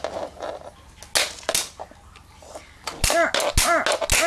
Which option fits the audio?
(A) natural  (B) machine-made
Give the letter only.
A